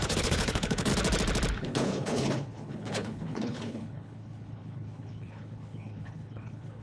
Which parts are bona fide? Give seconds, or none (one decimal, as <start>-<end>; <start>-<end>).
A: 0.9-1.6